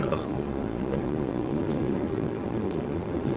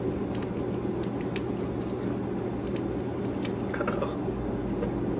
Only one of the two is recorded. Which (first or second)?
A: second